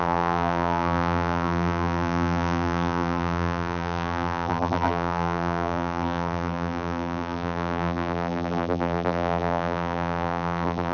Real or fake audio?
fake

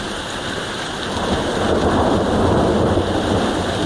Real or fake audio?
real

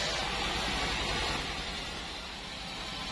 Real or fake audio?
real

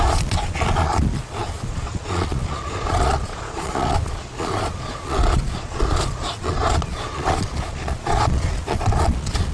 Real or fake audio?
fake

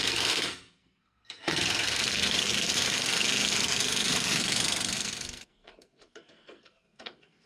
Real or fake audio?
fake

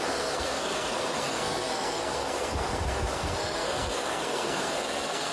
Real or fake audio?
fake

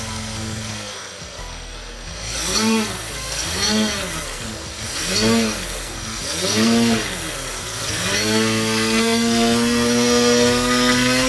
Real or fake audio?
fake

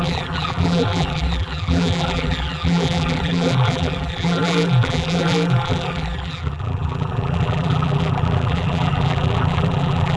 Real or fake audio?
fake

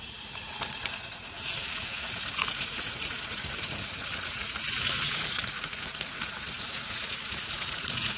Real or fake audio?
fake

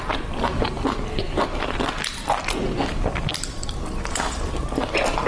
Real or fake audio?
real